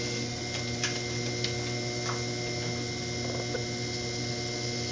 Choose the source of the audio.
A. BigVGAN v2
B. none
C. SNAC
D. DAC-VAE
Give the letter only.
B